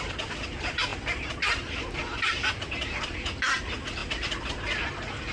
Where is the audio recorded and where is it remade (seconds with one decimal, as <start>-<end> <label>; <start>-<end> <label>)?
0.0-5.3 recorded